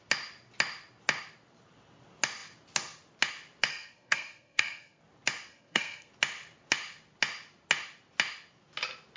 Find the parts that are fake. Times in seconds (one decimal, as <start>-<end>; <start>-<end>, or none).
3.7-5.0; 5.5-6.1